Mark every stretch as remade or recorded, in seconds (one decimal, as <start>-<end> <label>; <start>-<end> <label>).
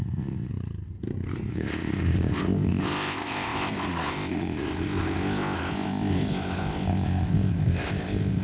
0.0-0.5 remade; 0.5-1.5 recorded; 1.5-8.4 remade